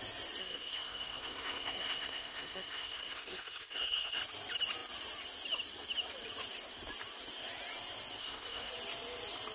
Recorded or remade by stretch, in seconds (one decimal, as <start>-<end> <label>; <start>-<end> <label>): 0.0-0.4 recorded; 0.4-4.2 remade; 4.2-8.2 recorded; 8.2-8.7 remade; 8.7-9.5 recorded